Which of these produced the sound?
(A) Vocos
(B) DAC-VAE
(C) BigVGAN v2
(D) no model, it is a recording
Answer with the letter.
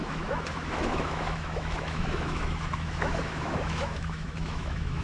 B